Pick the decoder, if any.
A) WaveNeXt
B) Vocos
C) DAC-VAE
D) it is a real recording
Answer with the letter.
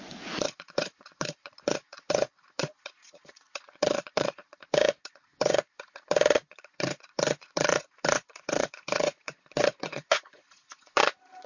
B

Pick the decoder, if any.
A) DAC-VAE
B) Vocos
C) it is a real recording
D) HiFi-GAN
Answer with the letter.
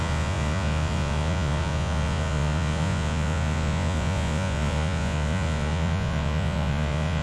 B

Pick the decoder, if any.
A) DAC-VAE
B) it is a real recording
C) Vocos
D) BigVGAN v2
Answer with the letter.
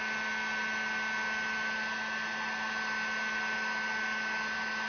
B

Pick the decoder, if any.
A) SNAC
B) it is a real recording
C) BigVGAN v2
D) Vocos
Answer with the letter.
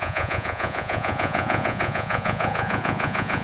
D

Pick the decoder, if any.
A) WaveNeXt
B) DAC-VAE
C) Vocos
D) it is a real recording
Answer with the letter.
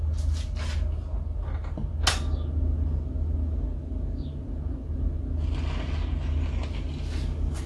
D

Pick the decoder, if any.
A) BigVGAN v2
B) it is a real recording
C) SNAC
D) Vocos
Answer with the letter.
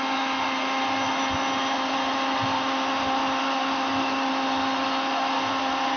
B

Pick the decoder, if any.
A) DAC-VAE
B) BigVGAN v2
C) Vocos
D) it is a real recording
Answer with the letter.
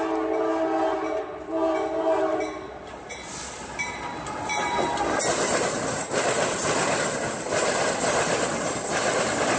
D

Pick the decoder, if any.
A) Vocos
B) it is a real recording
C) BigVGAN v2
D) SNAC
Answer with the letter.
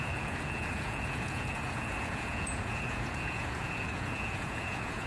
A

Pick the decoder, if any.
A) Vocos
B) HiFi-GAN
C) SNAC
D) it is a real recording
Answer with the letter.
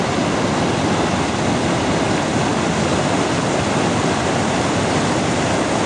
D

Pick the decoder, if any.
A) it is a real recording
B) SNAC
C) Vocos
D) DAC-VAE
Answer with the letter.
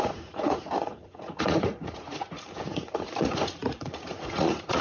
C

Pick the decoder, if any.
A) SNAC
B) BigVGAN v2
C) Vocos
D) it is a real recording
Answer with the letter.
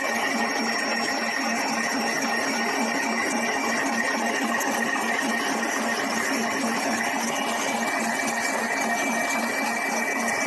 D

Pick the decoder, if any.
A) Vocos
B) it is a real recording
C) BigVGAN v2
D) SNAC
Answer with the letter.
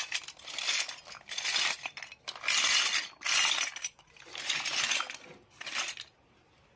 B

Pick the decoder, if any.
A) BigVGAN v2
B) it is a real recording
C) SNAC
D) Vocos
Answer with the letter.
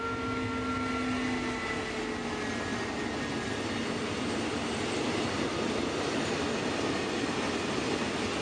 B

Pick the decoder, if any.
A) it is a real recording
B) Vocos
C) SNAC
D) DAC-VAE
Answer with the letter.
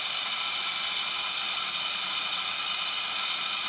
A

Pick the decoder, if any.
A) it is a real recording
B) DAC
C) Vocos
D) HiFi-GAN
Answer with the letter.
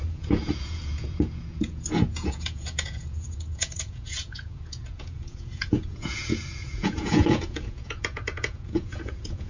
C